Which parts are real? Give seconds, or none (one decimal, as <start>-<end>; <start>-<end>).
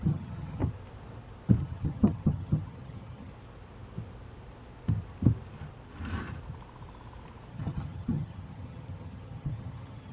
0.6-1.6; 3.3-7.5